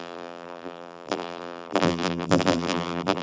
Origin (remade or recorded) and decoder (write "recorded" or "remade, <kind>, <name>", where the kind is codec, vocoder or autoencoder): remade, vocoder, BigVGAN v2